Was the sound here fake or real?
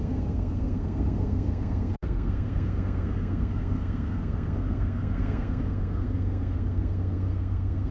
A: fake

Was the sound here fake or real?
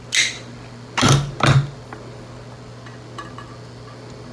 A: real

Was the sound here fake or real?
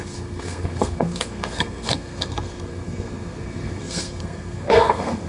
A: fake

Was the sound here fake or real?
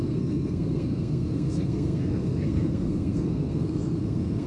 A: fake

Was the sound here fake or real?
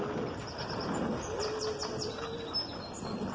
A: real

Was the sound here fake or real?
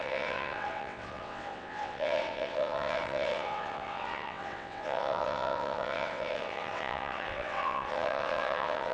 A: fake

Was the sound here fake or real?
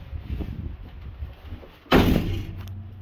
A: real